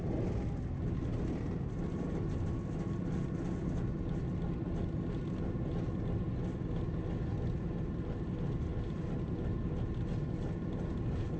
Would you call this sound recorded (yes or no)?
yes